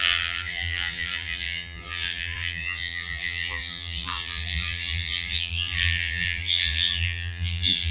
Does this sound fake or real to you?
fake